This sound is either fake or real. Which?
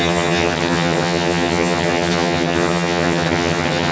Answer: fake